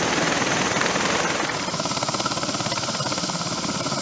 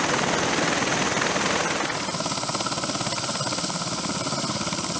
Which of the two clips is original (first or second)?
second